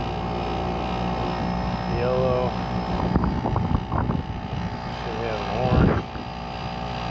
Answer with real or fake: real